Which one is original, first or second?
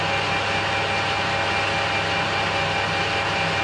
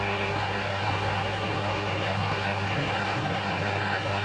first